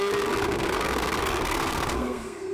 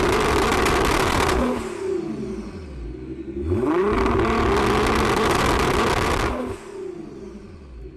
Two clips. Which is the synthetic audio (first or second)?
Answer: first